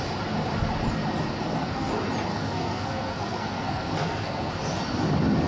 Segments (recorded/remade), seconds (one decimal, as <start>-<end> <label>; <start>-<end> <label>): 0.0-1.4 recorded; 1.4-1.9 remade; 1.9-2.3 recorded; 2.3-4.5 remade; 4.5-5.5 recorded